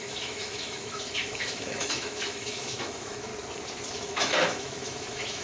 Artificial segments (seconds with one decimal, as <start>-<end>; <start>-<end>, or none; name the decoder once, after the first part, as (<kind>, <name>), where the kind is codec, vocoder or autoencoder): 0.0-3.3 (autoencoder, DAC-VAE); 3.9-5.4